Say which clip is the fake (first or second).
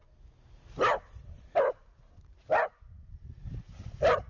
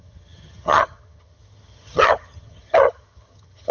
second